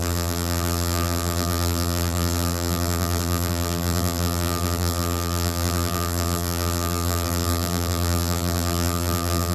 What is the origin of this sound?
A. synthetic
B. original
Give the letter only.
A